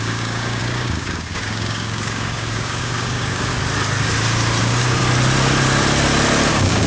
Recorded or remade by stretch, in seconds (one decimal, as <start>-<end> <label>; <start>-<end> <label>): 0.0-3.5 remade; 3.5-4.6 recorded; 4.6-5.0 remade; 5.0-6.5 recorded; 6.5-6.9 remade